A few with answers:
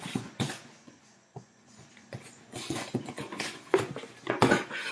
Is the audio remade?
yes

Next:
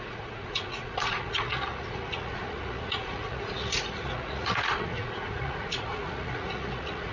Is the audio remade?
yes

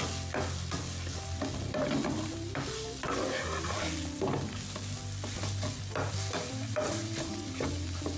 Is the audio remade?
no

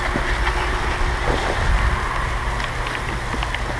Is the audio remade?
no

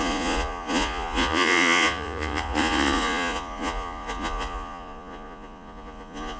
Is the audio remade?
yes